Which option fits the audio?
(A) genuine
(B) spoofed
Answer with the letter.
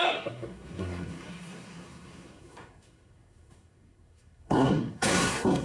B